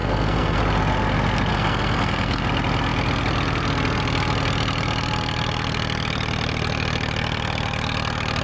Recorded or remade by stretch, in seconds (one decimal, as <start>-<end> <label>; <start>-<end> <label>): 0.0-0.6 remade; 0.6-1.5 recorded; 1.5-2.4 remade; 2.4-8.4 recorded